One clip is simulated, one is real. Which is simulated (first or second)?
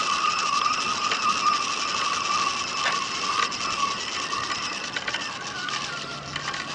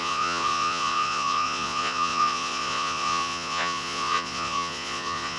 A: second